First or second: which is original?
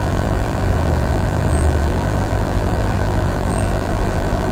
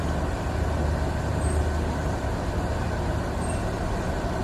second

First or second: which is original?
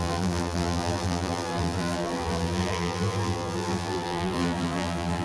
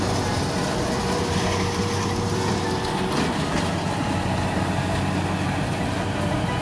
second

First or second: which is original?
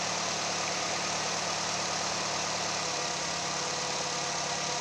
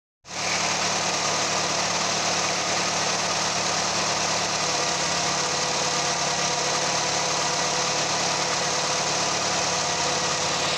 second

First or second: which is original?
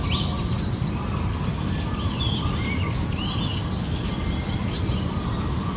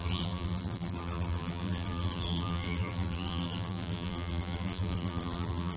first